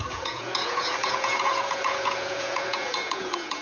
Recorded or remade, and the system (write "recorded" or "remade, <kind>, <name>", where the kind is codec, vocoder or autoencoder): remade, vocoder, Vocos